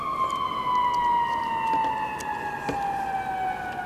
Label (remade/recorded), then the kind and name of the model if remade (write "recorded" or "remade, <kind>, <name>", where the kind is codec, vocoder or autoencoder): recorded